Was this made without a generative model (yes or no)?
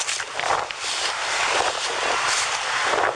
yes